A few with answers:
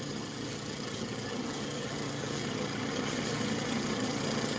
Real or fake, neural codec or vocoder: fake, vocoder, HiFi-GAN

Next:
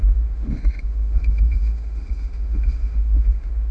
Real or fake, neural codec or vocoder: fake, autoencoder, DAC-VAE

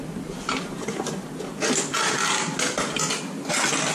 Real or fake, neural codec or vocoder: real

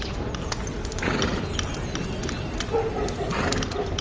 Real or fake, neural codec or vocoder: real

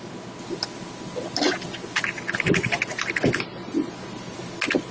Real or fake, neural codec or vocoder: real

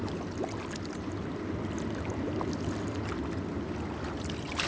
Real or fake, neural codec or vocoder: real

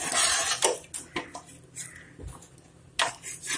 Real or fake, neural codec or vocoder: real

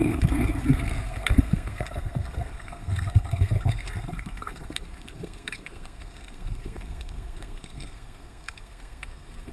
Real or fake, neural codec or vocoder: fake, codec, SNAC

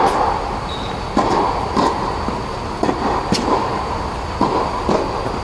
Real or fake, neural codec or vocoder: real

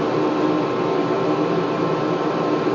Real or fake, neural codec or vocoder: real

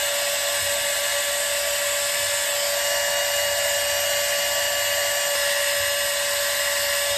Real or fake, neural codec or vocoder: real